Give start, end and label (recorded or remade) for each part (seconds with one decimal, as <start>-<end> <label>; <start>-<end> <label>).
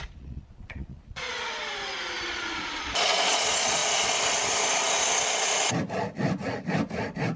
0.0-1.6 remade; 1.6-2.3 recorded; 2.3-3.8 remade; 3.8-7.4 recorded